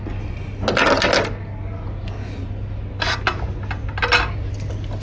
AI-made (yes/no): no